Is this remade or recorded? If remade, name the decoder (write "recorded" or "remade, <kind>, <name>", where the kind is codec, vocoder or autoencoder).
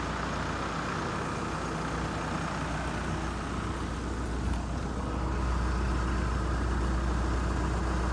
recorded